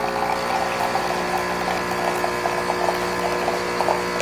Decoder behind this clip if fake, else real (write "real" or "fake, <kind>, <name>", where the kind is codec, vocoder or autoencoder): real